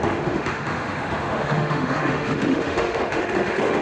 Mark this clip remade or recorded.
remade